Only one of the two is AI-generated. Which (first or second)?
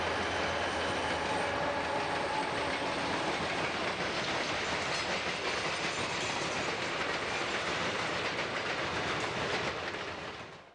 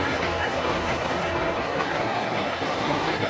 second